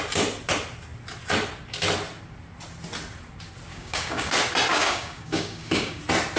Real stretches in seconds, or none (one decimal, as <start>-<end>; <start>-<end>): 0.0-3.7; 4.3-4.7; 6.0-6.4